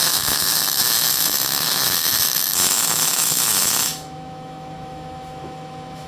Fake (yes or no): yes